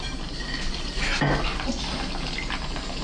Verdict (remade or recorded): recorded